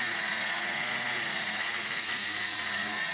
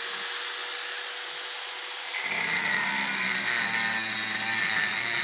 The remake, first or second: first